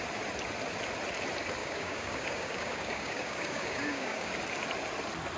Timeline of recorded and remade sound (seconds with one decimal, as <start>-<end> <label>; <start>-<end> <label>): 0.0-1.6 recorded; 1.6-4.3 remade; 4.3-5.4 recorded